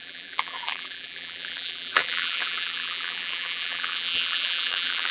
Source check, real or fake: fake